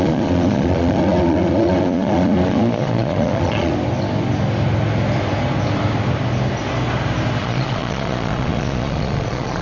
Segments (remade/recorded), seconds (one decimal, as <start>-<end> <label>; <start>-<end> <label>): 0.0-3.7 remade; 3.7-7.4 recorded; 7.4-9.6 remade